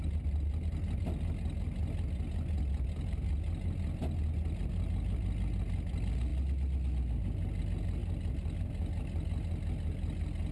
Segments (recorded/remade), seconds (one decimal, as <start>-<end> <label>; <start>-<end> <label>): 0.0-10.5 recorded